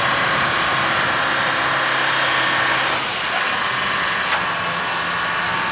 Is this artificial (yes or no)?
no